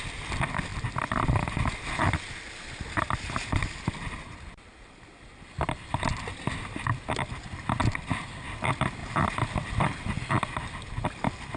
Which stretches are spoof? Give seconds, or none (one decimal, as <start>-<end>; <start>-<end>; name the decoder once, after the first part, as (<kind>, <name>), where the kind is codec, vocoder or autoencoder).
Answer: 0.7-1.7 (vocoder, BigVGAN v2); 7.8-8.5